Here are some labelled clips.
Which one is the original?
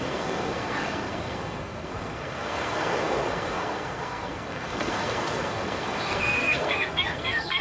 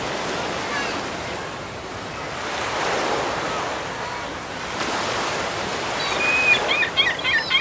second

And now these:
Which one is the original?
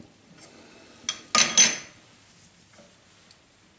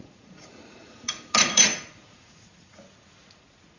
first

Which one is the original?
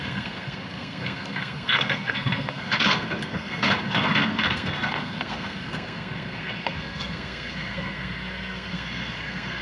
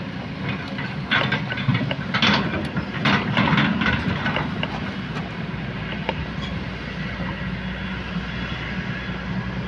second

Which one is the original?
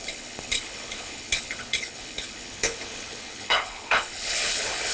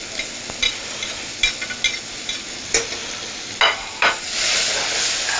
second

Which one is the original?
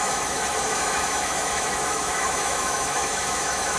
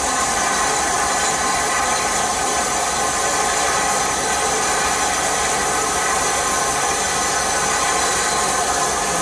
second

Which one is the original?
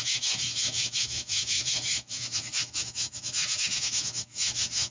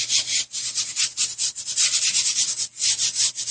second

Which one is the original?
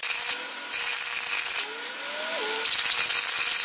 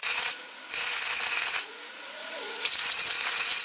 first